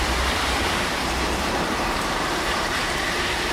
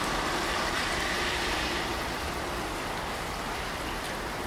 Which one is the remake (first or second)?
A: first